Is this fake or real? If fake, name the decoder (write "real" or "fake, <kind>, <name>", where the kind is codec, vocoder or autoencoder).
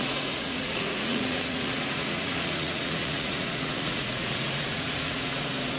fake, vocoder, Vocos